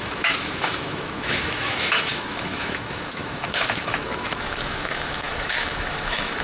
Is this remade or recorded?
remade